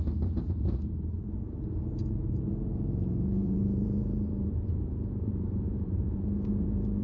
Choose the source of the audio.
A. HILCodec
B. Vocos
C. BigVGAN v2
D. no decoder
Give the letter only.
C